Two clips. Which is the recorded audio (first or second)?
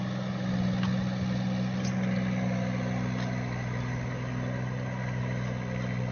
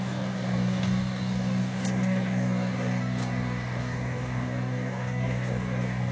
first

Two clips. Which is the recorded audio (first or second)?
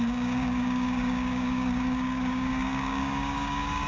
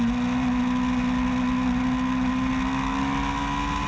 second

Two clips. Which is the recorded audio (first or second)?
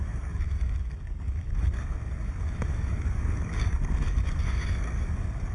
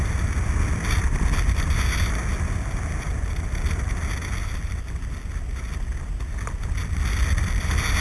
second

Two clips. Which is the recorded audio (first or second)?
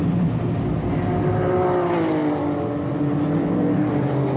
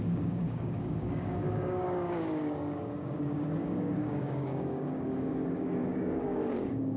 first